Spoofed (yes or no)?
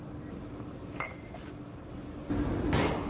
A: no